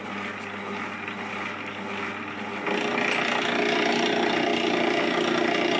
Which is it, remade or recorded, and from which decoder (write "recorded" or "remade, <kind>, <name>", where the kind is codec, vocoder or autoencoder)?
recorded